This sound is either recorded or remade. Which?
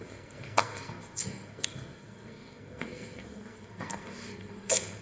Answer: remade